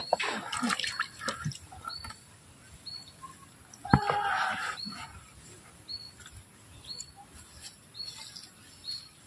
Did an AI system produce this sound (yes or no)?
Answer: no